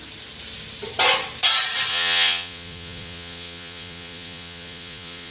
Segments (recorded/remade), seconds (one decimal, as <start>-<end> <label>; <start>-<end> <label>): 0.0-1.9 recorded; 1.9-5.3 remade